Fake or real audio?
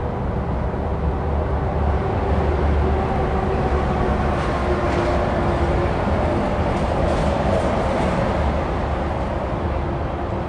real